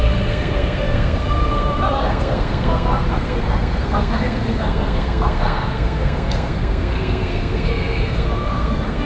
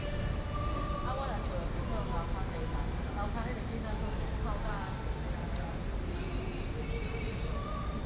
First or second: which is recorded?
second